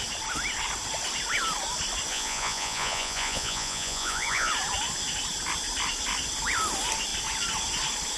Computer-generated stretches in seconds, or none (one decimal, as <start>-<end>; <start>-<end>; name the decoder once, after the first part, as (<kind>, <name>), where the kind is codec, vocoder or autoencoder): 2.1-4.5 (vocoder, Vocos)